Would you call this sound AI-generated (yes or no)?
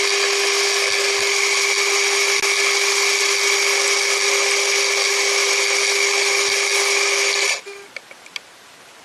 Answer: no